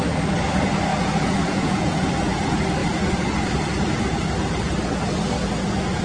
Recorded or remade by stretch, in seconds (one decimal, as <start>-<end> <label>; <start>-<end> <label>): 0.0-0.9 recorded; 0.9-2.1 remade; 2.1-6.0 recorded